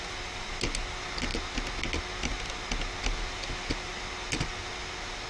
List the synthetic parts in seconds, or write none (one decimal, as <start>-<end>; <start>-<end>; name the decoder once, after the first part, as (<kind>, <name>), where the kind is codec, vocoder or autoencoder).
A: none